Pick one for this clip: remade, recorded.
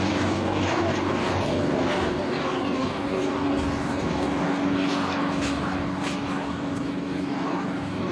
remade